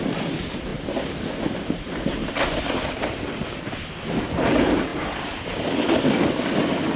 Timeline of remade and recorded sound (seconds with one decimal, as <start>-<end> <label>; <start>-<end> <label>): 0.0-7.0 recorded